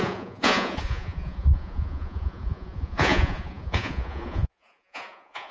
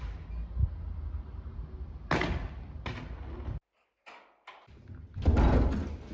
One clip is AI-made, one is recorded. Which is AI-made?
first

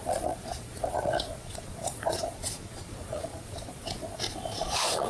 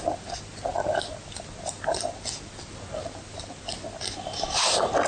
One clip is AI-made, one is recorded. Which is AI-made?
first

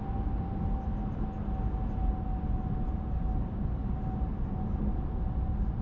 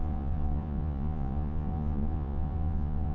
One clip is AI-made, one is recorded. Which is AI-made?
second